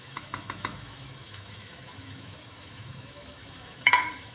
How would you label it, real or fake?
fake